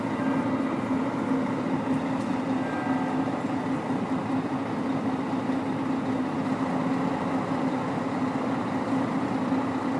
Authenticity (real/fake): real